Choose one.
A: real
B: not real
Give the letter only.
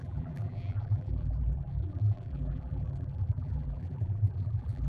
B